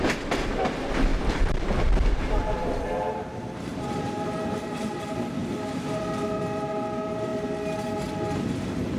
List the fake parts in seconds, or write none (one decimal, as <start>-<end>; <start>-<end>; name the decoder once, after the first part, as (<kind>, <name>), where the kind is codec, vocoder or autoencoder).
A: 1.1-5.0 (vocoder, BigVGAN v2)